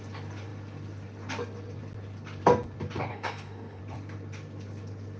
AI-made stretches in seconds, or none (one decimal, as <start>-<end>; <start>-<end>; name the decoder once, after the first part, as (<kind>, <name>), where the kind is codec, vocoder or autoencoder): 3.1-3.8 (codec, DAC)